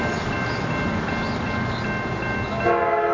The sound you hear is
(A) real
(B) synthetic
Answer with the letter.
A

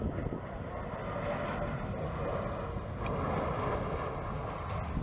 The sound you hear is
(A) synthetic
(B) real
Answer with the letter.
B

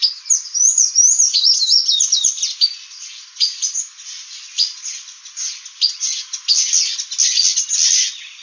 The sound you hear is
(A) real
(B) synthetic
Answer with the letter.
A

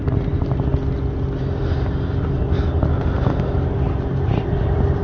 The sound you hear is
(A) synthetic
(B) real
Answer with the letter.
B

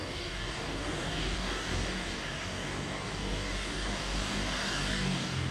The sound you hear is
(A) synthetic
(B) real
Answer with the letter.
A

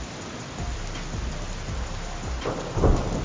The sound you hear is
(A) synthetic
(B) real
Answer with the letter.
B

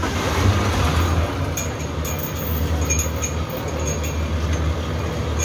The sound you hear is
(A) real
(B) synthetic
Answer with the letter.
A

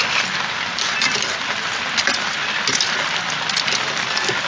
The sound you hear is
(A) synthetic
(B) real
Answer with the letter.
B